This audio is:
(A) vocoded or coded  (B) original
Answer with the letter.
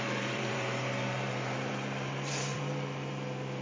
A